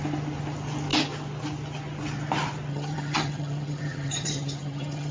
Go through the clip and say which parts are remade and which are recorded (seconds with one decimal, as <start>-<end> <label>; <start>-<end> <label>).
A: 0.0-2.7 recorded; 2.7-5.1 remade